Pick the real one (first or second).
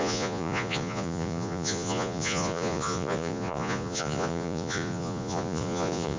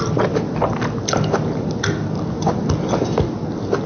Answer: second